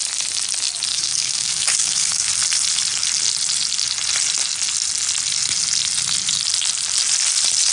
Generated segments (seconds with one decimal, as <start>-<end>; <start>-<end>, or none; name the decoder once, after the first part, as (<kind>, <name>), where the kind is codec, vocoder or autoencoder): 0.9-2.3 (codec, DAC)